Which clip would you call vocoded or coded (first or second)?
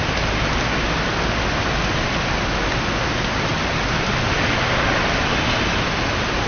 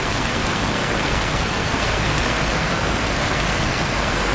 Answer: second